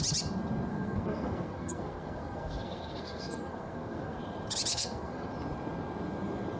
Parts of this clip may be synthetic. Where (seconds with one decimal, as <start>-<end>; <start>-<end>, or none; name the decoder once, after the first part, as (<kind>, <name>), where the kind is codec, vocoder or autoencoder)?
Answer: 0.7-4.2 (codec, SNAC); 4.7-5.3